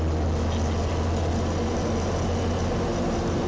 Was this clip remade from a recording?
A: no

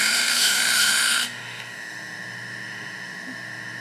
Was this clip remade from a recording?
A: yes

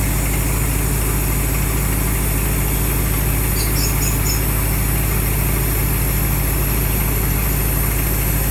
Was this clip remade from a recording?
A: no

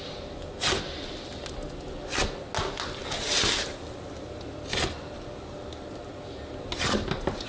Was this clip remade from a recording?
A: no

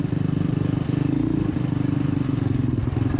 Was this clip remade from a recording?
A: no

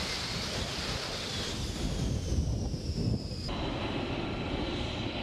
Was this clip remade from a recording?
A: no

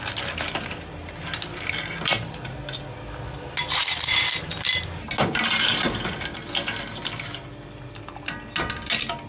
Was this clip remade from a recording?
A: no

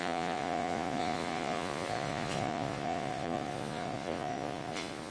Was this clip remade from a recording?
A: yes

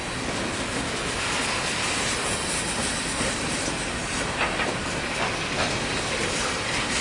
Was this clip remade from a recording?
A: no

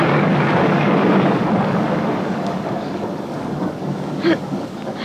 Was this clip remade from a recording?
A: yes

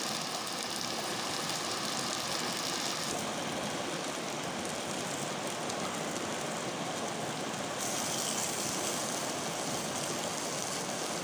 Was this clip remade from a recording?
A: no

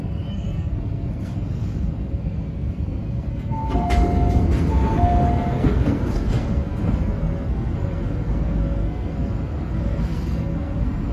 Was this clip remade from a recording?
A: yes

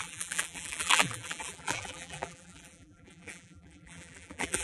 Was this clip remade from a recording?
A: yes